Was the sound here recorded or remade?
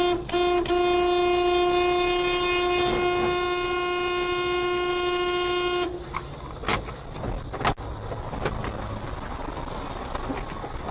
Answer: recorded